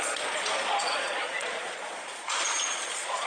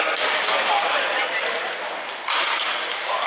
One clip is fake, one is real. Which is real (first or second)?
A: second